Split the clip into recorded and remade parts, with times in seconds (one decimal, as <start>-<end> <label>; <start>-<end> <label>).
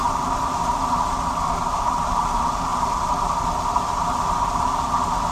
0.0-1.6 recorded; 1.6-2.7 remade; 2.7-5.3 recorded